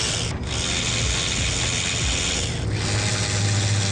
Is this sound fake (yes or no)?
no